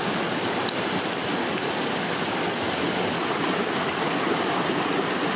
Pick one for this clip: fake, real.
real